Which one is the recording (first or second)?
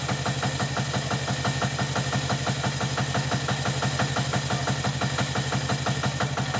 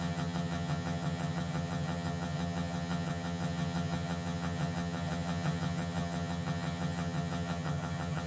first